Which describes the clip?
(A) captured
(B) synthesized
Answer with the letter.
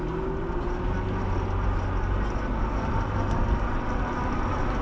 A